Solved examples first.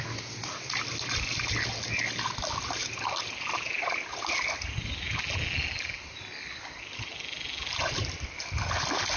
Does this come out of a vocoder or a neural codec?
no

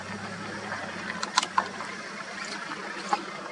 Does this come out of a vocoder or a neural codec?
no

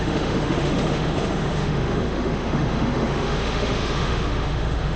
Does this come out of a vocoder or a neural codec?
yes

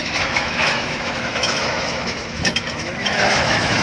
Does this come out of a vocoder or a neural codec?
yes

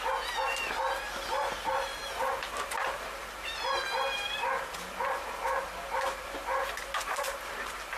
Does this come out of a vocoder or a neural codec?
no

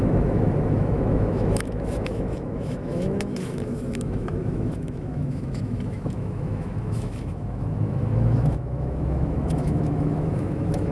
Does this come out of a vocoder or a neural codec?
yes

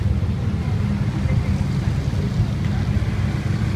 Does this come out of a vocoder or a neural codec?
no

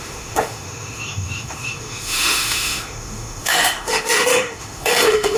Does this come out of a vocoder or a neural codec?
yes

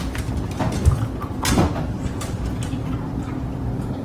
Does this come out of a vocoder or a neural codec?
no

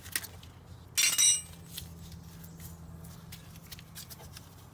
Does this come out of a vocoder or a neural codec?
no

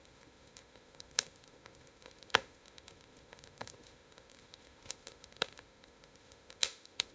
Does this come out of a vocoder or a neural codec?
yes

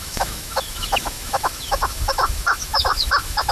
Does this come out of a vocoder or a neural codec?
yes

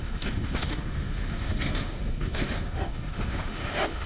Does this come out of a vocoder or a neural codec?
yes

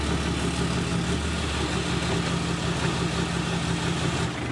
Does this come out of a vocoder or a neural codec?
no